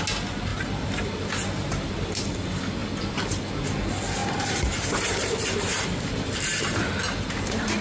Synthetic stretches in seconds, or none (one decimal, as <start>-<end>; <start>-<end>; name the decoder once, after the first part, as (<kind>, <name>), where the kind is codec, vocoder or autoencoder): 0.5-1.1 (vocoder, BigVGAN v2); 4.2-6.6